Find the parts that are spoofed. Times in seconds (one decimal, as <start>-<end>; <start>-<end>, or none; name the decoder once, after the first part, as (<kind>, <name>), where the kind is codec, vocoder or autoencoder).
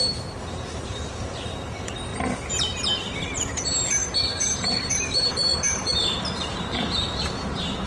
0.0-2.1 (vocoder, BigVGAN v2); 3.0-7.9